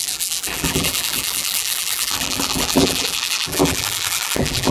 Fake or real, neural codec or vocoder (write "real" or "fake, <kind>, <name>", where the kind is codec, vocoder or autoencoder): fake, vocoder, BigVGAN v2